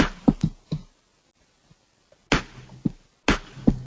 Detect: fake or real real